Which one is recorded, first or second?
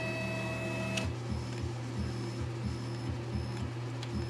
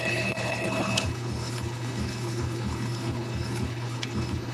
first